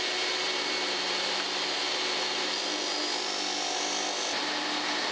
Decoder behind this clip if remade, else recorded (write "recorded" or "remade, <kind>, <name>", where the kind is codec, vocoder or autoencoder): recorded